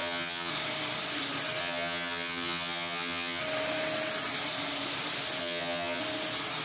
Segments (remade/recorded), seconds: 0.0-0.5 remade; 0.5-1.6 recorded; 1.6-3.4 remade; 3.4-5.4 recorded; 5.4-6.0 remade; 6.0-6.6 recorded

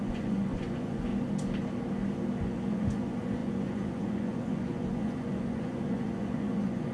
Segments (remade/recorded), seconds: 0.0-1.1 remade; 1.1-2.4 recorded; 2.4-6.9 remade

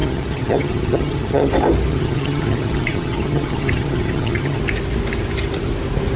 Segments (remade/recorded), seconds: 0.0-1.5 remade; 1.5-1.9 recorded; 1.9-4.6 remade; 4.6-6.2 recorded

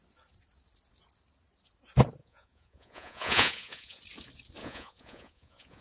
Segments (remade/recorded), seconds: 0.0-2.2 recorded; 2.2-4.0 remade; 4.0-4.6 recorded; 4.6-5.8 remade

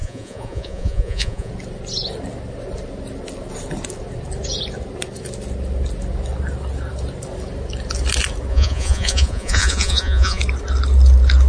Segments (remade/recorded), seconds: 0.0-1.5 remade; 1.5-8.5 recorded; 8.5-10.4 remade; 10.4-11.5 recorded

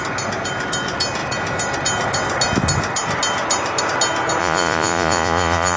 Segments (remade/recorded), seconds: 0.0-4.4 recorded; 4.4-5.8 remade